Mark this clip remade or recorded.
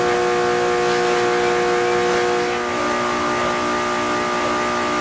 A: recorded